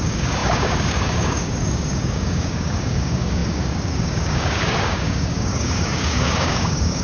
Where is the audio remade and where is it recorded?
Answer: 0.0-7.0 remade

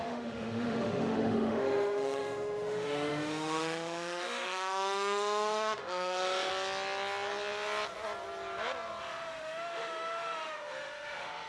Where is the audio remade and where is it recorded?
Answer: 0.0-6.5 remade; 6.5-9.0 recorded; 9.0-11.5 remade

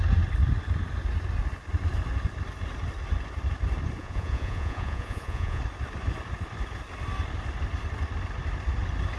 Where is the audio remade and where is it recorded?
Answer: 0.0-4.0 recorded; 4.0-5.6 remade; 5.6-9.2 recorded

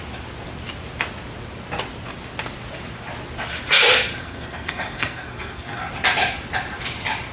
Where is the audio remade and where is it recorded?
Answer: 0.0-4.2 recorded; 4.2-5.9 remade; 5.9-7.3 recorded